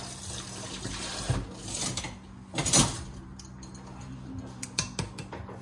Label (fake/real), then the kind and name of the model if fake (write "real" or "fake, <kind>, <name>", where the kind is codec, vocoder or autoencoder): real